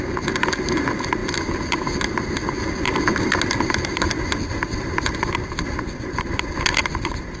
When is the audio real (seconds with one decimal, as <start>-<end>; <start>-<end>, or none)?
0.0-7.4